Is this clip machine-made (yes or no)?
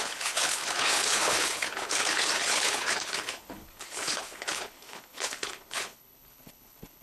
yes